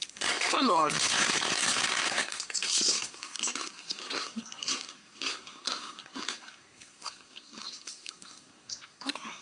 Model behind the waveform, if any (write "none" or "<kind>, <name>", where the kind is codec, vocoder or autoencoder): codec, SNAC